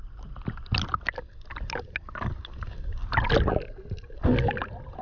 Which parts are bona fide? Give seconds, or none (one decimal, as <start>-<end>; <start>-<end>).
0.0-5.0